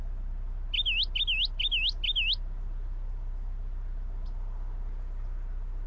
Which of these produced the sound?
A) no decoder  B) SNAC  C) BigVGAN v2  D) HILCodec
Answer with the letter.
A